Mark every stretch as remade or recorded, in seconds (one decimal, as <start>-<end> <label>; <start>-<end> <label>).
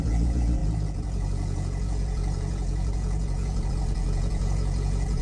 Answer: 0.0-5.2 remade